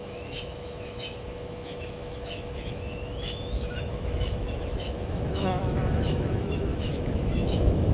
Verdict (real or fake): fake